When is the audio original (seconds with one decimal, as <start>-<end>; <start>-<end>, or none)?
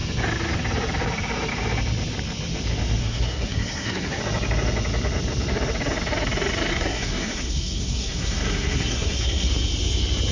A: 0.0-3.0; 4.2-6.7; 9.5-10.3